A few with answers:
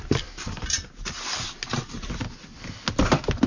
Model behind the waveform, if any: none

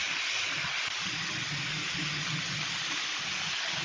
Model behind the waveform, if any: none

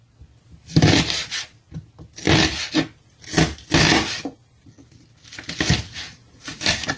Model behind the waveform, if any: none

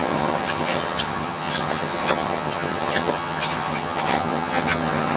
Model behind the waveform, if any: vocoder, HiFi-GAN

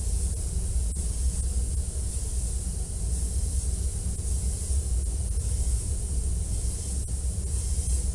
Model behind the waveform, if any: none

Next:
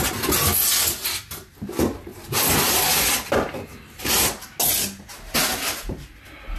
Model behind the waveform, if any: none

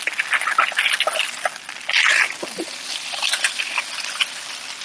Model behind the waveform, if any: none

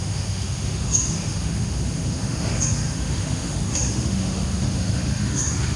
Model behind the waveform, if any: autoencoder, DAC-VAE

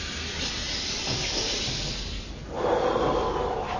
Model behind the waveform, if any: none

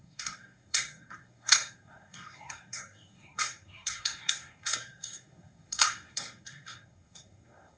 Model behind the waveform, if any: codec, SNAC